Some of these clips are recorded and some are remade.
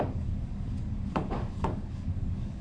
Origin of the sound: remade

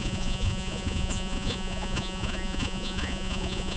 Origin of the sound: remade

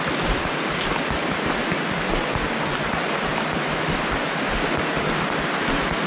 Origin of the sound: recorded